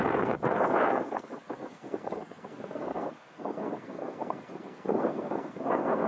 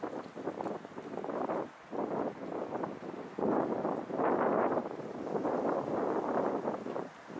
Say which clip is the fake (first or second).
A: first